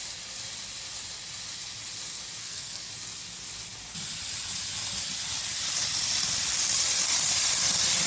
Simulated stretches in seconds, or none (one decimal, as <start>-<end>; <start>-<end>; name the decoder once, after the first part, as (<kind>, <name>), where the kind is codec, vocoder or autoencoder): 2.4-2.9 (codec, SNAC)